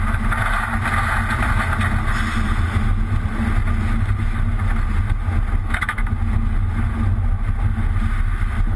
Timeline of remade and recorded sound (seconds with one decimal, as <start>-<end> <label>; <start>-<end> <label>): 0.0-5.6 recorded; 5.6-6.1 remade; 6.1-8.8 recorded